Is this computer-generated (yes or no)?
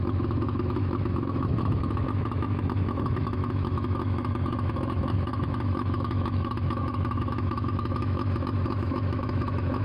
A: yes